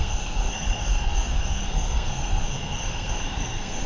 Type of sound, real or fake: fake